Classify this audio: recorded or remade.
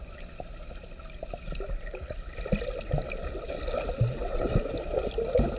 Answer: recorded